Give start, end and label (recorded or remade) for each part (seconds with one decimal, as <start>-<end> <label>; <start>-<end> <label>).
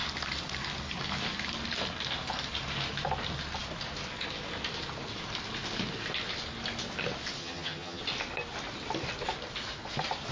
0.0-7.4 recorded; 7.4-8.0 remade; 8.0-10.3 recorded